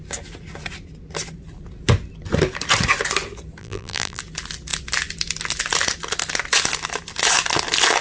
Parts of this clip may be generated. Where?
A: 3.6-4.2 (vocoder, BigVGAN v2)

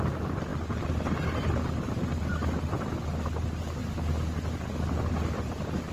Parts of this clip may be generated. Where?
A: none

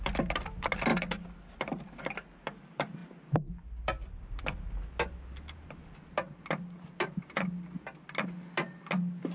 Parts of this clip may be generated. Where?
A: none

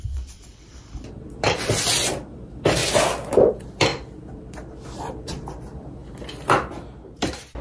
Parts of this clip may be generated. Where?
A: 0.0-2.8 (vocoder, BigVGAN v2); 3.5-3.9; 5.0-6.0

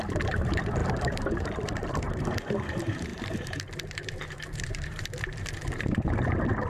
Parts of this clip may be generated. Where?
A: 0.0-6.7 (vocoder, BigVGAN v2)

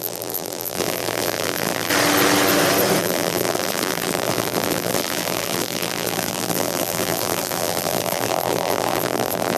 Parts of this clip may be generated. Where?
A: 0.0-1.9 (vocoder, BigVGAN v2); 3.0-9.6

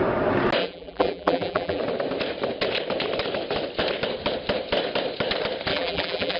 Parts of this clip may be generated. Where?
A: 0.6-1.8 (vocoder, BigVGAN v2); 5.7-6.4

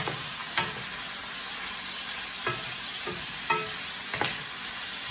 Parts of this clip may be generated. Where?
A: none